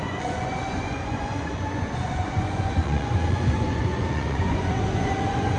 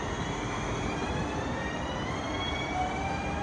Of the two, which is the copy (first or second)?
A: first